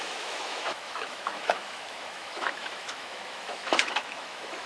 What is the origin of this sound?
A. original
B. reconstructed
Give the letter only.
B